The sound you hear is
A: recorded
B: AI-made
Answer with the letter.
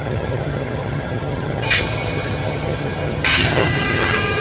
B